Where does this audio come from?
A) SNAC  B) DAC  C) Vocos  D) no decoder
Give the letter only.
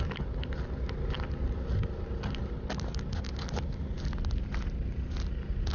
D